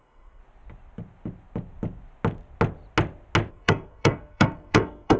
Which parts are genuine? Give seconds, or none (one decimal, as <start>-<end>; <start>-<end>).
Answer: 0.4-3.5